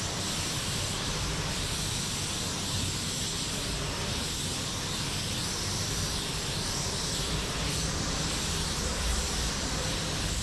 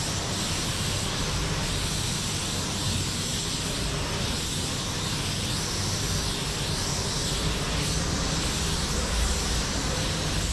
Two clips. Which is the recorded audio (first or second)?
second